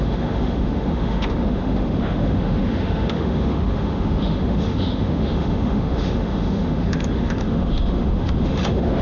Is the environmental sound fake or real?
fake